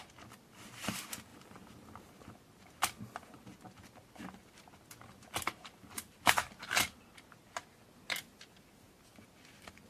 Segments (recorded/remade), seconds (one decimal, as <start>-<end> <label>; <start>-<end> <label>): 0.0-9.9 recorded